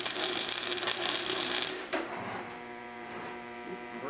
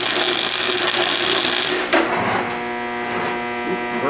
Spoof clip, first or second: first